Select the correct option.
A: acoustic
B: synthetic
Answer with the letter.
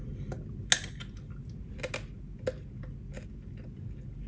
A